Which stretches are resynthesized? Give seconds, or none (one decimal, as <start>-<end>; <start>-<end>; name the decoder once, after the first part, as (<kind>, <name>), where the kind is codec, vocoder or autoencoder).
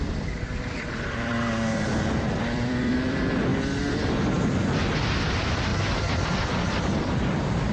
0.0-3.5 (vocoder, BigVGAN v2); 5.1-7.7